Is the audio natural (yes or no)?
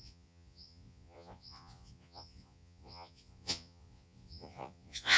no